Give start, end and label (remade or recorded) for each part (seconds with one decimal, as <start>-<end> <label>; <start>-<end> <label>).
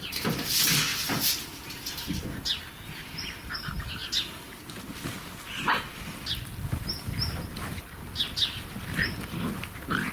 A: 0.0-10.1 recorded